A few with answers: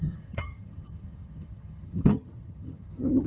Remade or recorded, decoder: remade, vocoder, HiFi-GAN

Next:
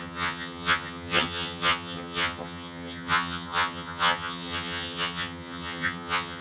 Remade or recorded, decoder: remade, vocoder, HiFi-GAN